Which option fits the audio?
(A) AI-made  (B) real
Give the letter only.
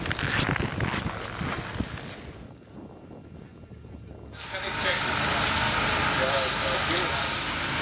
B